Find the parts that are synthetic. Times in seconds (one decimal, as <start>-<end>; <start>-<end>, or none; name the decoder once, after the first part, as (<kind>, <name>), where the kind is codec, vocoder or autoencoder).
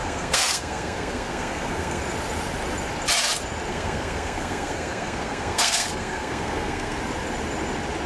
0.0-2.0 (codec, SNAC); 3.7-7.0